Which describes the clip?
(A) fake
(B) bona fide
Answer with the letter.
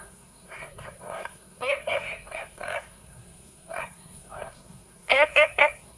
A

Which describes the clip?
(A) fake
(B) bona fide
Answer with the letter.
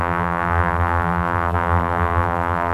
A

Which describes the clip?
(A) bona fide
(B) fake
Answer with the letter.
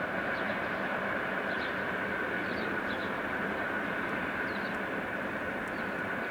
B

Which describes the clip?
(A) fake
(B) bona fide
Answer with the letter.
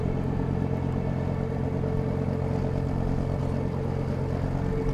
B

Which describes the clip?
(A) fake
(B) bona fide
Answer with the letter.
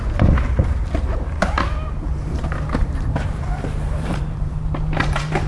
A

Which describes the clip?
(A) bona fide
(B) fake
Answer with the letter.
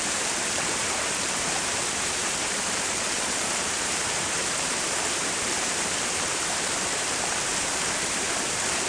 B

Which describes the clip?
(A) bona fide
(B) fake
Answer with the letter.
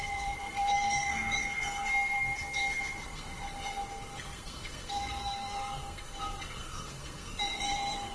B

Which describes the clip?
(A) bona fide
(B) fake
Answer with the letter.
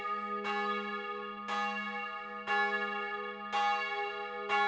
A